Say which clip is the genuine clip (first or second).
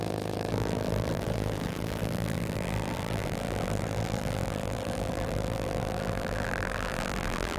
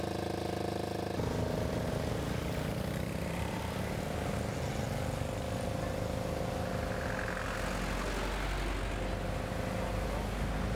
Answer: second